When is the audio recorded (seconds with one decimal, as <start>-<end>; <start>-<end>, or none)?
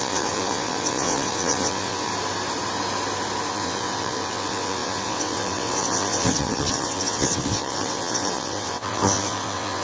2.1-3.5